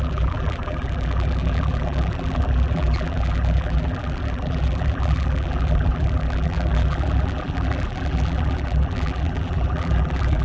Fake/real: fake